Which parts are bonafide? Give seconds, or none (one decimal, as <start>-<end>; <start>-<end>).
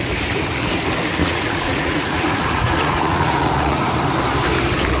0.0-1.2; 3.9-5.0